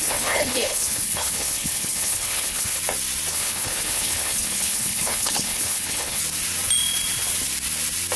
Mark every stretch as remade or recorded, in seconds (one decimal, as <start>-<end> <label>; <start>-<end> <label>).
0.0-2.8 remade; 2.8-3.3 recorded; 3.3-6.2 remade; 6.2-8.2 recorded